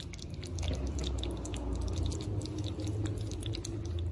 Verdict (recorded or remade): recorded